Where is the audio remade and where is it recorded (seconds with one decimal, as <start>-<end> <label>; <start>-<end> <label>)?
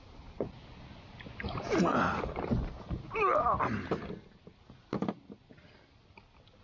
0.0-6.6 recorded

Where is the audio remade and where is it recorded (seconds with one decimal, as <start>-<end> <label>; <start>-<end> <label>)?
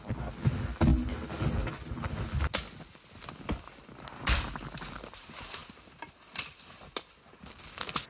0.0-8.1 recorded